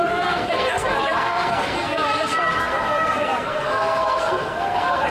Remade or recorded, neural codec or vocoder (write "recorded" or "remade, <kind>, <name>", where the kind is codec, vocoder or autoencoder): remade, codec, SNAC